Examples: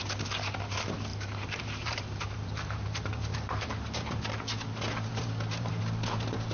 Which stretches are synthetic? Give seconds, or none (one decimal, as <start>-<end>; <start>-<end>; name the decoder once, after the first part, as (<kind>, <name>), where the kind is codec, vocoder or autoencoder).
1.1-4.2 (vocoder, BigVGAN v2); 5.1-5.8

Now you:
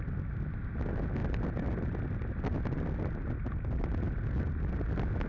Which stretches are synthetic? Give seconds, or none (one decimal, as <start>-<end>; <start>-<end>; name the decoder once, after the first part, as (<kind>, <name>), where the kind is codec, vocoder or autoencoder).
none

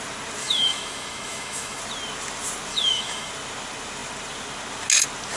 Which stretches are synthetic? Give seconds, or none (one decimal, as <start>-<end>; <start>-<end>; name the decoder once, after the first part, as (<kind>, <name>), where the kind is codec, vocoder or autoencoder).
0.4-1.8 (autoencoder, DAC-VAE); 2.7-3.3

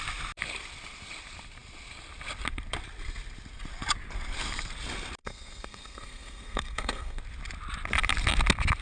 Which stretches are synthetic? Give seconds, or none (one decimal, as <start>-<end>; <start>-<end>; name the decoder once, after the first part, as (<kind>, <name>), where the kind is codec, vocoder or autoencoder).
5.2-7.2 (codec, SNAC)